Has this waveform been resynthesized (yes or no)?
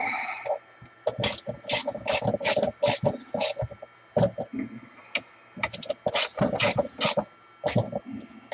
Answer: no